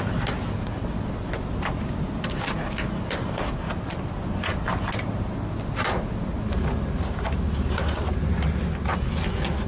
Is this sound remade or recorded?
recorded